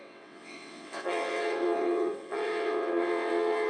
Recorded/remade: remade